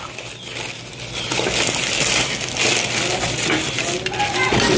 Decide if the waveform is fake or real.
real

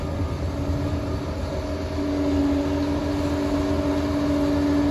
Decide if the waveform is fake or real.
real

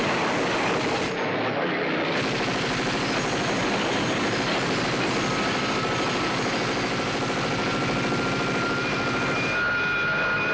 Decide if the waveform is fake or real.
real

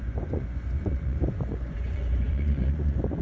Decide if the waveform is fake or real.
fake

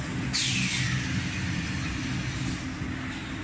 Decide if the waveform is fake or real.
real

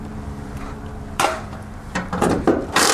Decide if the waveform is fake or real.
fake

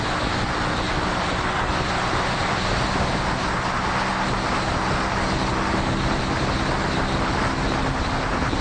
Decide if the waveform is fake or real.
real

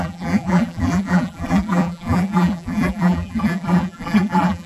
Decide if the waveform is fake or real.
fake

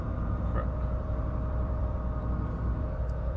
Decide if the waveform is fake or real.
fake